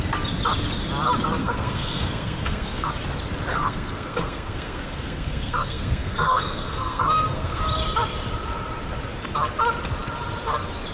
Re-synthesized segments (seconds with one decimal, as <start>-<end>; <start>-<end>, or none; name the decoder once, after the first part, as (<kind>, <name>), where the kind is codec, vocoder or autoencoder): 1.4-2.9 (codec, SNAC); 3.5-7.6